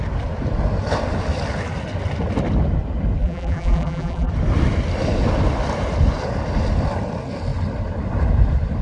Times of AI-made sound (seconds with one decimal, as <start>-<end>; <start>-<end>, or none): 3.2-4.3